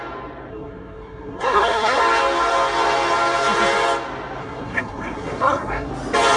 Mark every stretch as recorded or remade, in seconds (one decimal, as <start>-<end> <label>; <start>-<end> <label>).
0.0-0.5 recorded; 0.5-2.0 remade; 2.0-4.4 recorded; 4.4-5.9 remade; 5.9-6.4 recorded